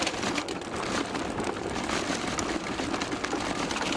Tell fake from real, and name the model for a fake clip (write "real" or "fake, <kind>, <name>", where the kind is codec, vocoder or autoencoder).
real